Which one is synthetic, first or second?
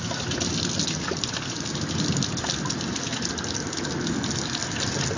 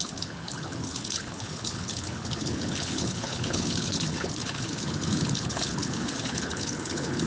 second